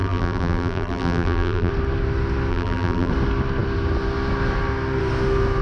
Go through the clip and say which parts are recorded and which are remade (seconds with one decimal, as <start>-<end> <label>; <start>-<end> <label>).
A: 0.0-1.7 remade; 1.7-2.5 recorded; 2.5-3.1 remade; 3.1-5.6 recorded